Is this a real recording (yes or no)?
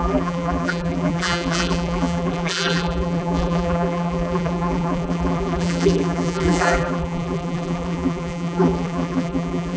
no